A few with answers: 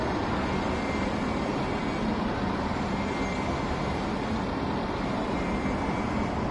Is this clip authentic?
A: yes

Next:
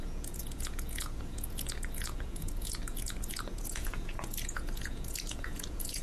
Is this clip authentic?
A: no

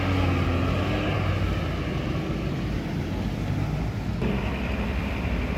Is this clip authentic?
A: yes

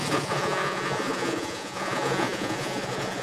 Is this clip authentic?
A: no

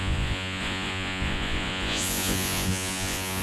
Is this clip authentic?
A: no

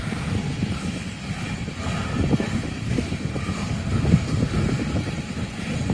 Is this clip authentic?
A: yes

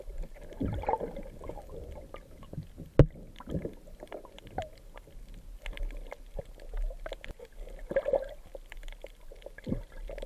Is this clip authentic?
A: yes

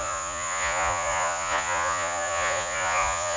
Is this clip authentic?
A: no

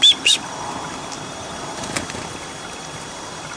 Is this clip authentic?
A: yes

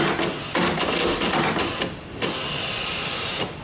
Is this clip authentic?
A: yes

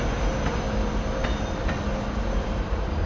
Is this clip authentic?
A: yes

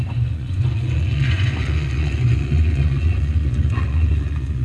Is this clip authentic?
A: no